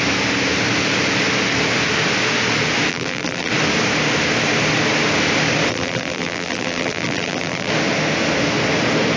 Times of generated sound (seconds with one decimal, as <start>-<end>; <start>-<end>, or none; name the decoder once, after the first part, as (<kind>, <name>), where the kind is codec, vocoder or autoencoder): 2.9-3.5 (vocoder, BigVGAN v2); 5.7-7.7